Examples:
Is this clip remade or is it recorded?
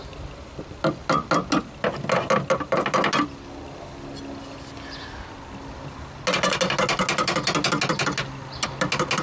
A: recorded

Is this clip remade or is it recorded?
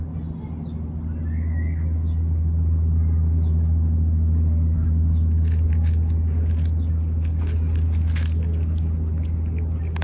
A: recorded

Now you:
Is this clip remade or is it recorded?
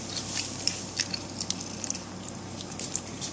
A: recorded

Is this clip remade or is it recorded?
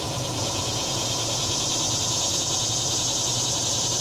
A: remade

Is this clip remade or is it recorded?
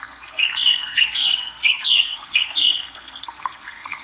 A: remade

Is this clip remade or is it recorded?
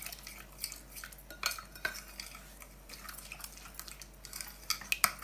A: recorded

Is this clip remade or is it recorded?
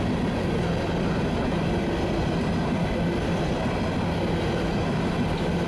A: recorded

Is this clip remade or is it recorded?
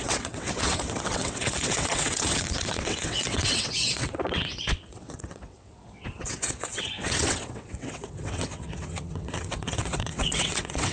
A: remade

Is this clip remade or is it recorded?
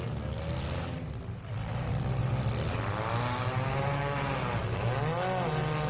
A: recorded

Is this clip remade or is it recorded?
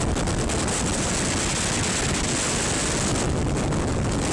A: recorded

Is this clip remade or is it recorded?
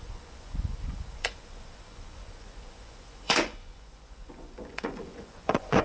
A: remade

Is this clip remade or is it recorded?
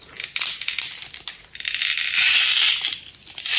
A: recorded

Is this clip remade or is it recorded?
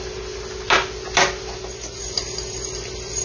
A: recorded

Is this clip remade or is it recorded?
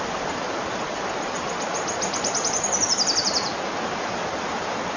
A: remade